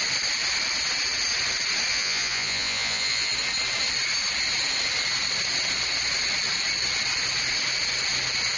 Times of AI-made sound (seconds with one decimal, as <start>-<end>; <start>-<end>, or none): 1.9-3.3